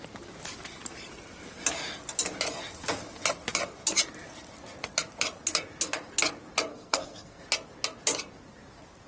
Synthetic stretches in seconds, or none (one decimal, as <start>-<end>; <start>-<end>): 6.7-7.4